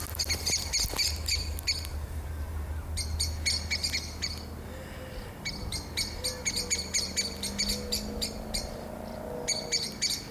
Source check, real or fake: real